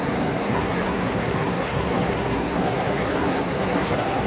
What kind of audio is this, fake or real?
fake